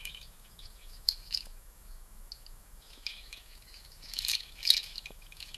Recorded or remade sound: remade